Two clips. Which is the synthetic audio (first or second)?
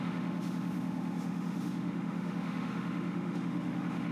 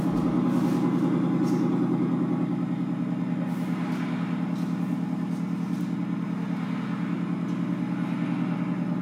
first